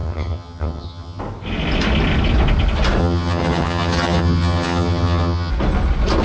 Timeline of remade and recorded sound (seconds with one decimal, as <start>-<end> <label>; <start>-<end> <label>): 0.0-1.2 remade; 1.2-3.0 recorded; 3.0-5.5 remade; 5.5-6.2 recorded